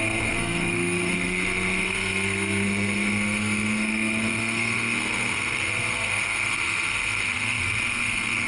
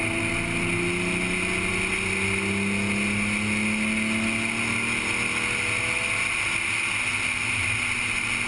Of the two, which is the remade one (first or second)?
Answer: first